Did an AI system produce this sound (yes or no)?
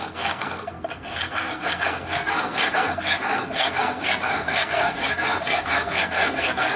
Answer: yes